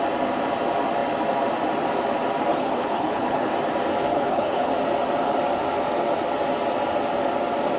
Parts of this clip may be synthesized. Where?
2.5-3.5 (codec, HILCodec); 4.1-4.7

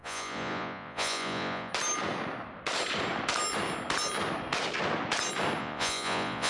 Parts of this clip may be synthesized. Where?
0.0-1.7 (vocoder, Vocos); 5.6-6.5

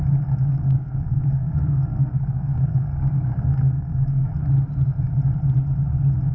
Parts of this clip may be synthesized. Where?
0.5-4.3 (codec, SNAC)

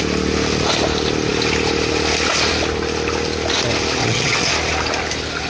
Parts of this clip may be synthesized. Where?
4.0-4.5 (vocoder, HiFi-GAN)

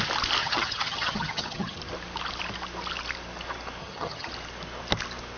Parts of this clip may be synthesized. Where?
0.4-1.8 (vocoder, HiFi-GAN); 3.8-4.3